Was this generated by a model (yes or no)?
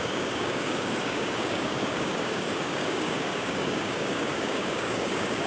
yes